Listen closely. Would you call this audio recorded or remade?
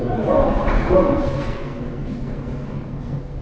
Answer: remade